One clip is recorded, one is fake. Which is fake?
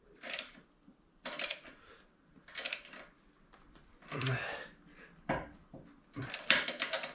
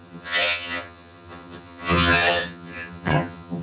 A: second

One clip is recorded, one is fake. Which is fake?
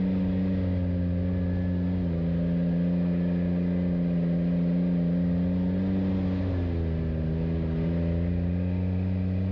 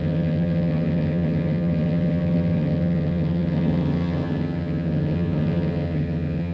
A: second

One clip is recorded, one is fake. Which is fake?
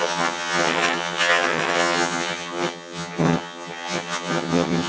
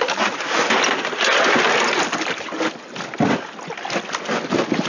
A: first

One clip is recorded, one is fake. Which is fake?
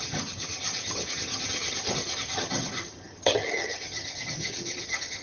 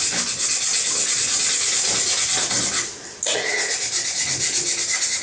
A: first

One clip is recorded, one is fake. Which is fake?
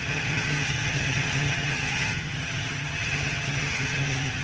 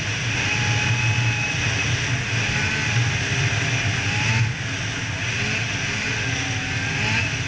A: first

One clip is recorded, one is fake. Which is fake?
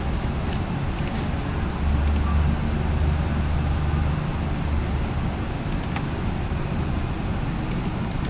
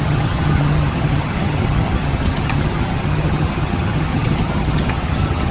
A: second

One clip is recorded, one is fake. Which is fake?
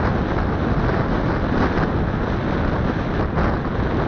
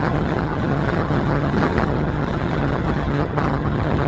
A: second